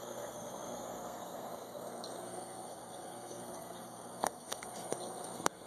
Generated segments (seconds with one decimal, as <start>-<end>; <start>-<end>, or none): 0.0-5.7